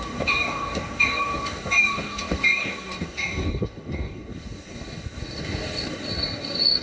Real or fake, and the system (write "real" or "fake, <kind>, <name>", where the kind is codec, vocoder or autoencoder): fake, codec, DAC